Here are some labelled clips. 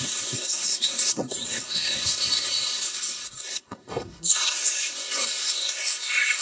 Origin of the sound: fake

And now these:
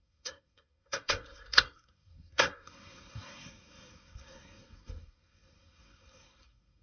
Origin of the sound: fake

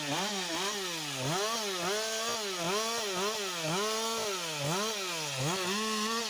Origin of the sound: real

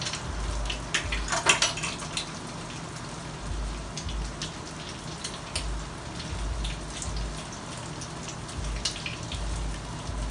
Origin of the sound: real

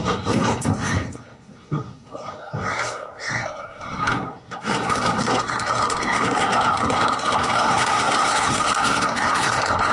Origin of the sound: fake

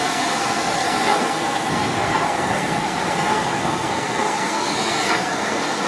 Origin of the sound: fake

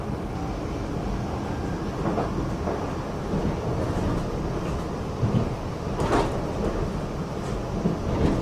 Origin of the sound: real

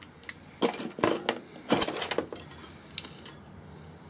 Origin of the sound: real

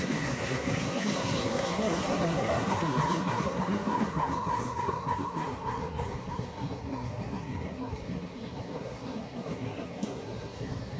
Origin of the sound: fake